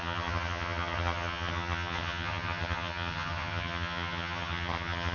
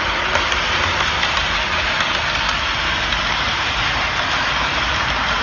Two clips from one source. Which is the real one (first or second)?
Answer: second